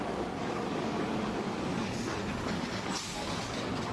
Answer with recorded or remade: remade